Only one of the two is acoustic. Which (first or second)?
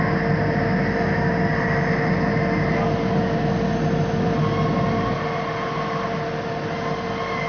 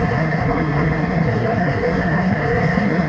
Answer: first